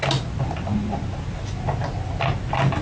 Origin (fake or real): real